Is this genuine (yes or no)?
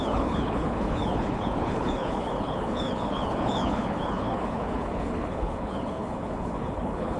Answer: no